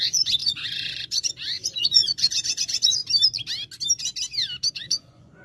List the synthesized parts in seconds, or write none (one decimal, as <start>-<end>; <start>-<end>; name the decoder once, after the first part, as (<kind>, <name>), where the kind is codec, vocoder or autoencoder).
0.0-3.0 (vocoder, Vocos); 4.7-5.4